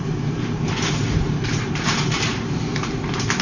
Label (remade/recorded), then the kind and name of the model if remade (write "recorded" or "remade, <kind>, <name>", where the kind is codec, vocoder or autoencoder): remade, vocoder, BigVGAN v2